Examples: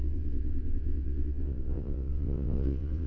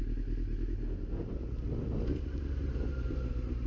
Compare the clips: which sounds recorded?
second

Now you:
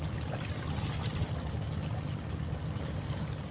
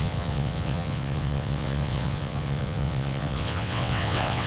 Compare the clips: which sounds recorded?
first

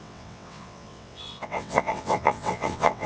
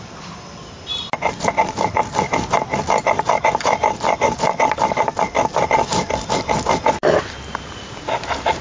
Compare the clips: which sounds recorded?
second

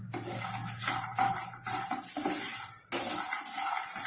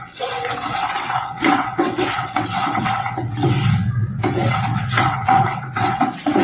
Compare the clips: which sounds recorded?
first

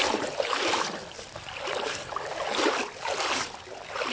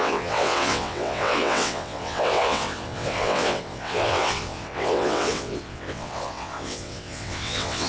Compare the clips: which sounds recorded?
first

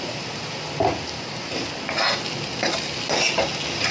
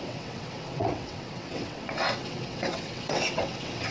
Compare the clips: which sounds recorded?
first